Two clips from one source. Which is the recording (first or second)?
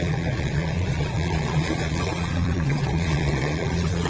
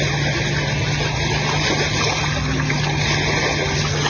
second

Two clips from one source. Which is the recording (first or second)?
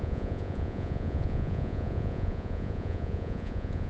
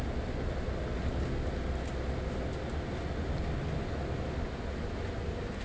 second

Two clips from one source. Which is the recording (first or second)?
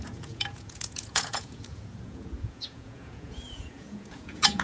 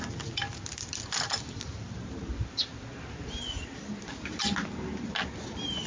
second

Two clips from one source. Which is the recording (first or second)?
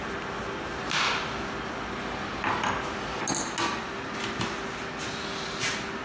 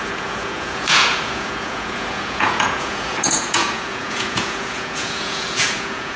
first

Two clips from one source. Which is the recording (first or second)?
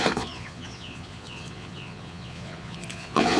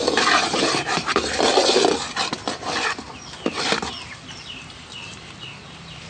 second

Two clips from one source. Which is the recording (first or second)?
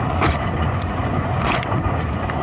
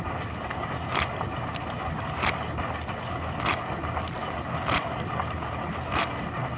second